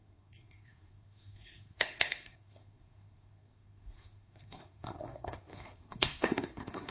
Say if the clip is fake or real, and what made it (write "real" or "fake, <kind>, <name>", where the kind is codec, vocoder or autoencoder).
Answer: fake, codec, SNAC